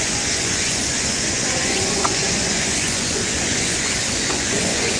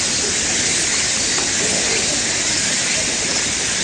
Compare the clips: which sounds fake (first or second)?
first